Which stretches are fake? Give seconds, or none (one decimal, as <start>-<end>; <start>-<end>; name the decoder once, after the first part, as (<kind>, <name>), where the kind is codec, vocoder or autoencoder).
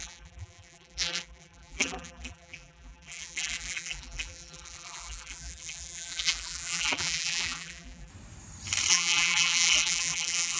0.0-8.1 (vocoder, BigVGAN v2); 8.9-10.6